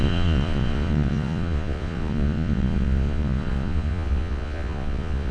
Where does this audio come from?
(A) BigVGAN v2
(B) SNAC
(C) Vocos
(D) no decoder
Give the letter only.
C